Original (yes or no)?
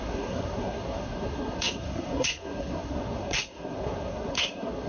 no